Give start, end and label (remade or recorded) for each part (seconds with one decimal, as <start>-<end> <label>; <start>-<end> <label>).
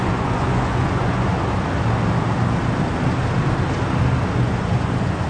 0.0-1.3 remade; 1.3-4.4 recorded; 4.4-5.3 remade